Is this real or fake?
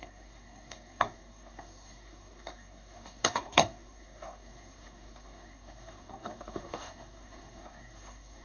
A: fake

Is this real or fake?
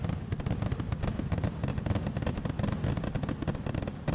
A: real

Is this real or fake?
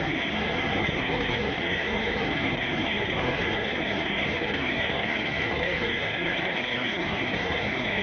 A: fake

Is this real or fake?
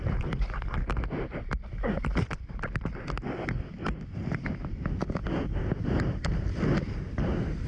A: real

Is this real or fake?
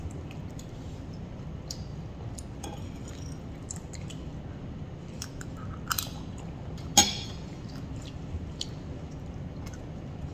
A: real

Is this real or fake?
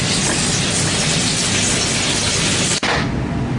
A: real